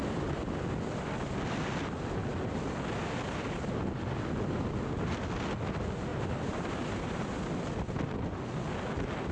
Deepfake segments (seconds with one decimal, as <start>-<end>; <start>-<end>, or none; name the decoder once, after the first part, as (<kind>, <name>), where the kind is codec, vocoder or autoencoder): 6.1-7.4 (vocoder, BigVGAN v2)